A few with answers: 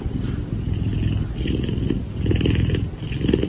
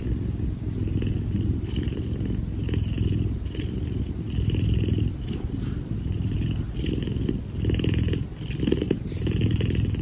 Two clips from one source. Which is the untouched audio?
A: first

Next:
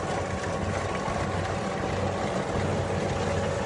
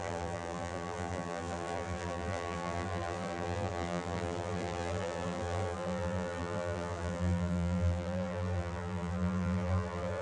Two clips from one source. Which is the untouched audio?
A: first